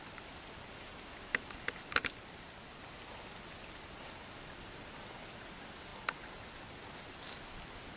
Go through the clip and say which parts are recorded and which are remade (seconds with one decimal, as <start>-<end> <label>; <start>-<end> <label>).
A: 0.0-2.0 recorded; 2.0-2.8 remade; 2.8-8.0 recorded